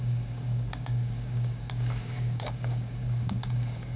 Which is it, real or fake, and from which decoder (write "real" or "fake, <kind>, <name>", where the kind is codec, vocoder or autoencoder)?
fake, codec, DAC